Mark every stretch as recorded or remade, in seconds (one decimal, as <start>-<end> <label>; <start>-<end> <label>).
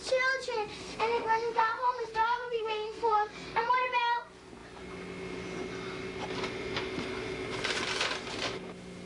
0.0-0.7 recorded; 0.7-3.7 remade; 3.7-9.1 recorded